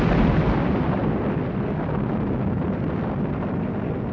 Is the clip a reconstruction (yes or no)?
no